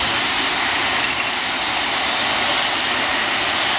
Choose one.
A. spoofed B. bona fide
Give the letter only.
B